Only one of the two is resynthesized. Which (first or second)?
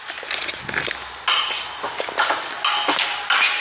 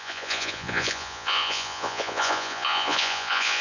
second